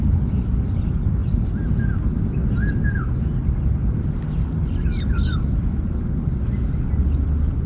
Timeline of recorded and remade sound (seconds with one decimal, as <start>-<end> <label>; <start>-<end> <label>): 0.0-7.7 recorded